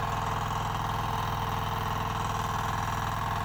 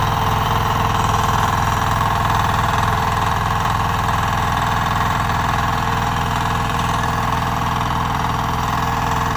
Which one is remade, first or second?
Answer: second